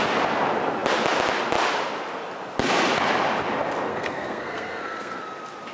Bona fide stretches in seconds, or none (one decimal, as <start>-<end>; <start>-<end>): 0.0-3.9; 5.2-5.7